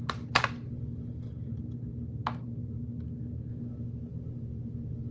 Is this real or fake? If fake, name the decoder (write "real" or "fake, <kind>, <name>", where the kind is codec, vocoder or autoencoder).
real